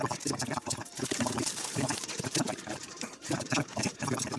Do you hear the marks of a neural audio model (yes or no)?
yes